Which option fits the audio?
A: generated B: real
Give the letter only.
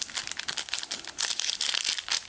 B